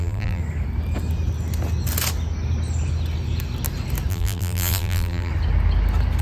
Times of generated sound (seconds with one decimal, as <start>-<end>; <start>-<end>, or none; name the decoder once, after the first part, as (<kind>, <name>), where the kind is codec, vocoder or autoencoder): 0.0-0.4 (vocoder, BigVGAN v2); 4.1-5.3